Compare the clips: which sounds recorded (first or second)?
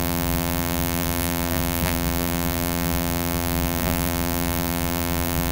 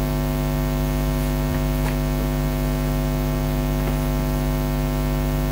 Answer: second